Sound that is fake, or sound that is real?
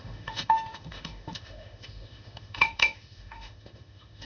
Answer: fake